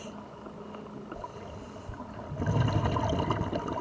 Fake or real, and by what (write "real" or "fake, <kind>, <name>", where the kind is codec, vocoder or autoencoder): real